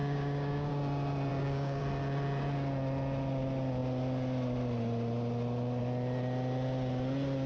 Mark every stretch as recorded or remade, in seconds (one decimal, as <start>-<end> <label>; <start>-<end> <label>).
0.0-0.7 remade; 0.7-1.3 recorded; 1.3-1.8 remade; 1.8-7.5 recorded